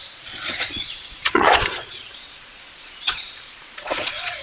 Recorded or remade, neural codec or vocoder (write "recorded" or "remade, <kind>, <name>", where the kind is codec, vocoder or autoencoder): remade, vocoder, Vocos